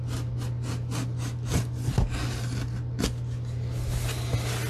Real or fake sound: real